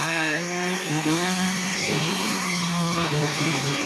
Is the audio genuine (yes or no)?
no